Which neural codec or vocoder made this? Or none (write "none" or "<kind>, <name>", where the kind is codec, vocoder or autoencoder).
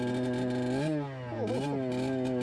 none